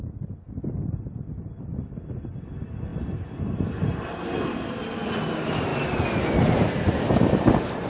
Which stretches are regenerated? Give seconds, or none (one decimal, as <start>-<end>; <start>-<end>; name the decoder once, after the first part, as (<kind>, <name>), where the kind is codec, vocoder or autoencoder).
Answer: none